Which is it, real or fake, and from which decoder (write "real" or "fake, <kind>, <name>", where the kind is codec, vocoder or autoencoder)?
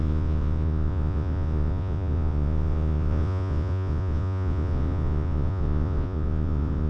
fake, vocoder, Vocos